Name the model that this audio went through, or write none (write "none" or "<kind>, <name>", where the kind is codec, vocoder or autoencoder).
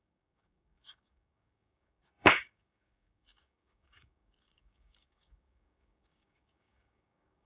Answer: codec, DAC